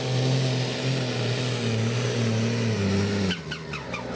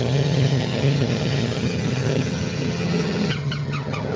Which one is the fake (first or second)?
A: second